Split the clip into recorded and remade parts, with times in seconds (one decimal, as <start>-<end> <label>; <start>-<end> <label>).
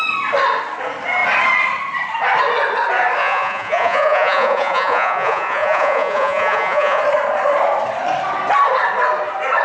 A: 0.0-3.2 recorded; 3.2-7.0 remade; 7.0-9.6 recorded